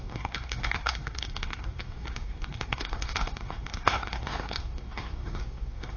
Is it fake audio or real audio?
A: fake